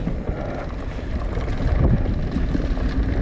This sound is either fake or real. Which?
real